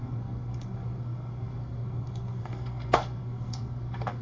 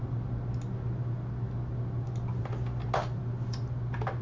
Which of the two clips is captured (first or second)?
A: second